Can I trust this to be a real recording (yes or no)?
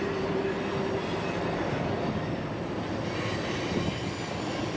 yes